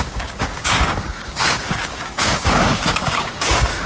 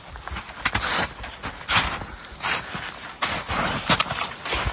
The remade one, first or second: first